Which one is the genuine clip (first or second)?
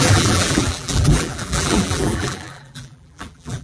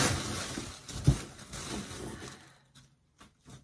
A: second